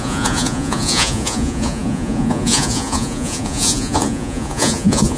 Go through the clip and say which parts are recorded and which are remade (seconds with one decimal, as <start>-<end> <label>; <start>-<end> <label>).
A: 0.0-5.2 remade

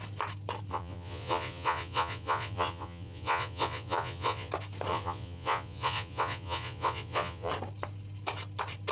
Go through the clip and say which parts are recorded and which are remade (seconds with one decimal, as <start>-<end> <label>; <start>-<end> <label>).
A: 0.0-0.7 recorded; 0.7-4.5 remade; 4.5-4.9 recorded; 4.9-7.5 remade; 7.5-8.9 recorded

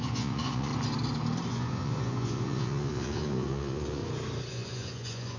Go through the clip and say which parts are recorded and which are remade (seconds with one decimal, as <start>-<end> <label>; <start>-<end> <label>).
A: 0.0-0.7 remade; 0.7-1.5 recorded; 1.5-4.0 remade; 4.0-4.5 recorded; 4.5-5.4 remade

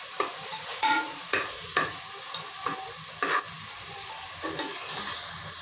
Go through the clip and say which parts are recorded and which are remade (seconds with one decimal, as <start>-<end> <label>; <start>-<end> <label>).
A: 0.0-0.5 recorded; 0.5-2.0 remade; 2.0-5.6 recorded